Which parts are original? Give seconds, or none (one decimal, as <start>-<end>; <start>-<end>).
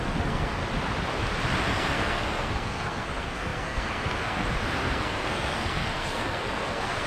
0.6-1.6